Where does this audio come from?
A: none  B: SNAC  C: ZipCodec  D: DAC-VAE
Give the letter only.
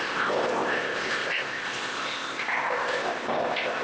C